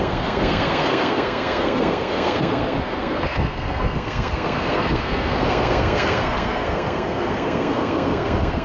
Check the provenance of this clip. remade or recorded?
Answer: remade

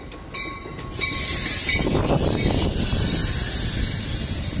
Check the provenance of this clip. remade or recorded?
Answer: recorded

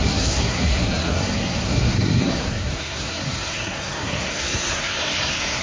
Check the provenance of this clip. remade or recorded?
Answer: remade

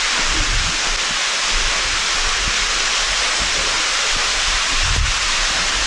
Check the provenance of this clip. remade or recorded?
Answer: recorded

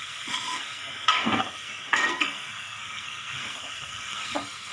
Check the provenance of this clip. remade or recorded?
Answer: remade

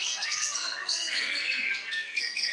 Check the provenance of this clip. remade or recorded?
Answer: remade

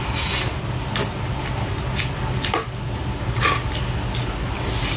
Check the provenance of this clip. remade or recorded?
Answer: recorded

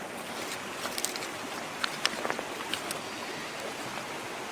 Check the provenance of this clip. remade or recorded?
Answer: recorded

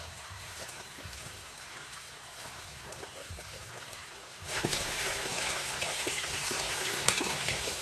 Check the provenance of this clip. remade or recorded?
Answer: remade